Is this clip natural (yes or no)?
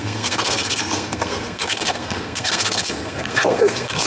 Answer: no